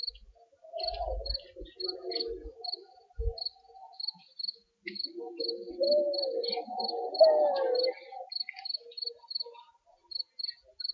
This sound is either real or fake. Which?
real